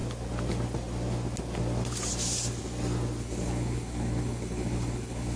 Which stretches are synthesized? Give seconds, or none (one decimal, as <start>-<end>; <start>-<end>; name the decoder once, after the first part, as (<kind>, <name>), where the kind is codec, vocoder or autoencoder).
3.2-5.4 (codec, HILCodec)